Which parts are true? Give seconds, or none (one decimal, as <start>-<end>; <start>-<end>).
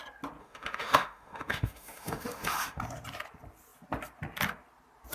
0.0-0.4; 2.8-5.1